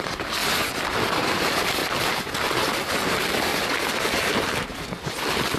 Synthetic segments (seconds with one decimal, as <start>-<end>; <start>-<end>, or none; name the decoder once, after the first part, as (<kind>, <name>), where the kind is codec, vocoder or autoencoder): 0.0-0.4 (vocoder, BigVGAN v2); 1.1-1.8; 2.9-3.5; 4.3-4.7